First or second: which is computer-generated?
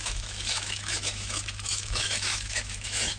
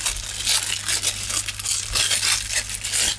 first